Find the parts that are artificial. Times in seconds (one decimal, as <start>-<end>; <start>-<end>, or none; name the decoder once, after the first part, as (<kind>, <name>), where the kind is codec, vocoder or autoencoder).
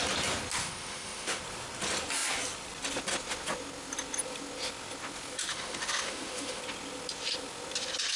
0.6-1.4 (autoencoder, DAC-VAE); 5.4-6.6